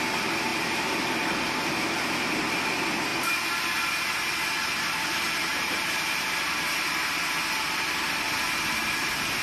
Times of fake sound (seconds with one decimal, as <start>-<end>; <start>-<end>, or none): 5.5-6.2